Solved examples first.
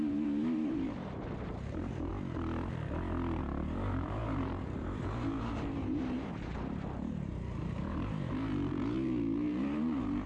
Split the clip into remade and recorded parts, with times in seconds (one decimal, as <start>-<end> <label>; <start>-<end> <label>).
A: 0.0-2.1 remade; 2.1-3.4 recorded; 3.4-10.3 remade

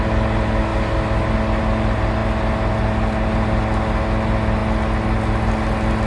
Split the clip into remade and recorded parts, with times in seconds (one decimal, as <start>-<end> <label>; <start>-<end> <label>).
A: 0.0-6.1 recorded

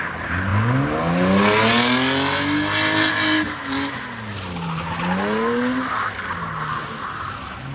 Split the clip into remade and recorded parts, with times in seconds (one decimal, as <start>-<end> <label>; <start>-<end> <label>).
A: 0.0-7.7 recorded

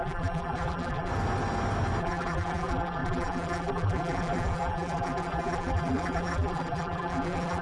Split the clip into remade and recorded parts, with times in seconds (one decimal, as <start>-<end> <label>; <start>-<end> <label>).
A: 0.0-1.1 remade; 1.1-2.0 recorded; 2.0-7.6 remade

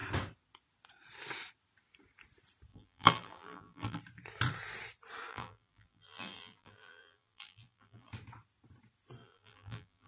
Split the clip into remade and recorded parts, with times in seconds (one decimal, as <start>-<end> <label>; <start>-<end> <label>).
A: 0.0-2.7 recorded; 2.7-4.0 remade; 4.0-5.3 recorded; 5.3-8.1 remade; 8.1-9.2 recorded; 9.2-10.1 remade